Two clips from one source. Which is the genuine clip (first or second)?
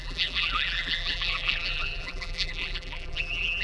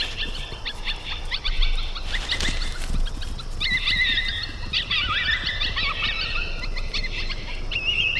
second